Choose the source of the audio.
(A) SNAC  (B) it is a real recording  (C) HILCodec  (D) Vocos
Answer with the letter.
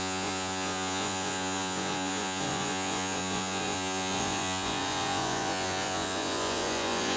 D